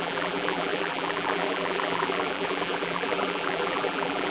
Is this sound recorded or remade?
remade